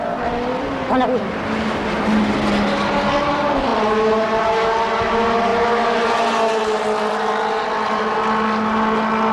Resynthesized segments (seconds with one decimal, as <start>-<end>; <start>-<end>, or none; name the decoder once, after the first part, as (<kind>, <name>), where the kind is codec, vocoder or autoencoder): none